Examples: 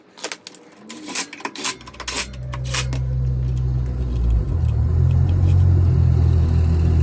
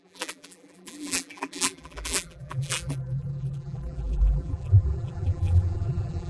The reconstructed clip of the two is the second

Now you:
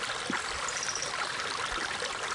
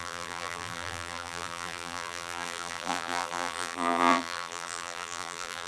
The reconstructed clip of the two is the second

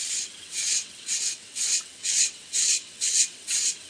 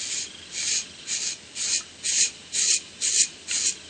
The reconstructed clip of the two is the first